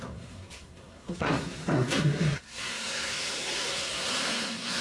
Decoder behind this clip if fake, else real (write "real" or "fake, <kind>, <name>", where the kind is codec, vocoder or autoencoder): fake, codec, SNAC